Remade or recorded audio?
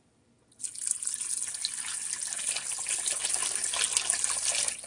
recorded